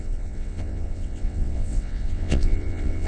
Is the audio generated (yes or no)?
yes